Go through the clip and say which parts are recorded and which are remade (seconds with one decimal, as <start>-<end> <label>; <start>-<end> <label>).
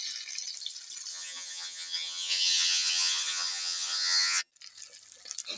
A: 0.0-1.1 recorded; 1.1-4.5 remade; 4.5-5.6 recorded